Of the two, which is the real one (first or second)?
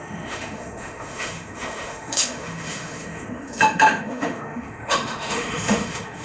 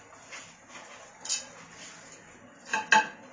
second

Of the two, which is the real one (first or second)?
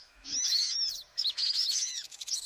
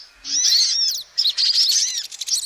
second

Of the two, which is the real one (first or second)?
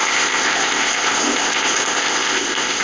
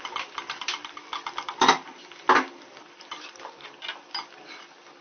second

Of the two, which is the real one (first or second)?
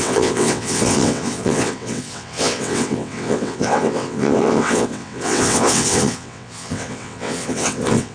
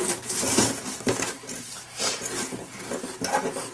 second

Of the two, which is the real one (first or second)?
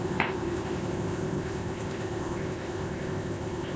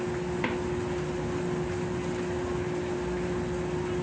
second